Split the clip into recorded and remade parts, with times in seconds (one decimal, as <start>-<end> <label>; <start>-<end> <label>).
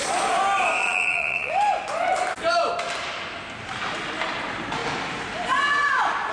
0.0-0.8 recorded; 0.8-1.5 remade; 1.5-6.3 recorded